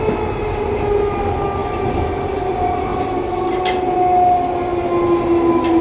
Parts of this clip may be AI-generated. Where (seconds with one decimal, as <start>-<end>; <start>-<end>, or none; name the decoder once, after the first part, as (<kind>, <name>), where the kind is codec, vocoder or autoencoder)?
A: none